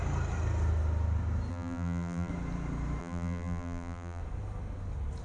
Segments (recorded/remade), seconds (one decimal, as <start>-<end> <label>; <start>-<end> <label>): 0.0-1.5 recorded; 1.5-2.3 remade; 2.3-3.0 recorded; 3.0-4.2 remade; 4.2-5.2 recorded